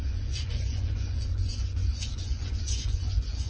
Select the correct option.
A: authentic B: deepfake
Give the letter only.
B